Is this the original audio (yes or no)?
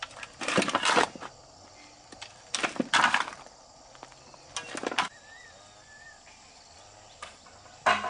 yes